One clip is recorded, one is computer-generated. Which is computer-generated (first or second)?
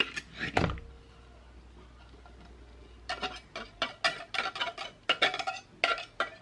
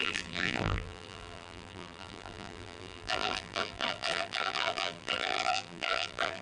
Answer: second